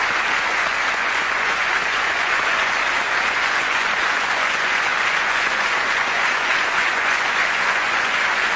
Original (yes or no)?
no